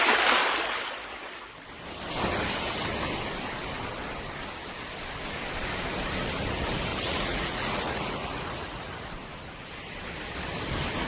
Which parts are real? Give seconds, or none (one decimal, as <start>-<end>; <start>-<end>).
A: 0.0-6.9; 9.1-11.1